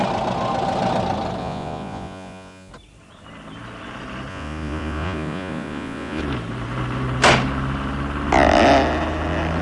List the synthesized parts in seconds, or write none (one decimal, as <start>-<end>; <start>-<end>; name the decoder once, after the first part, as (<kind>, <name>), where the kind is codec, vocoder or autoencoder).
1.4-2.7 (vocoder, Vocos); 4.3-6.2